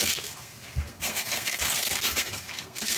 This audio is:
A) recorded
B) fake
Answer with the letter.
B